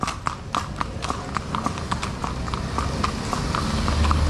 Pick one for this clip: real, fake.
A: real